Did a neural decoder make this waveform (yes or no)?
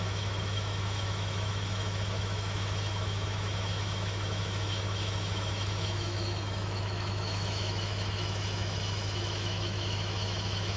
yes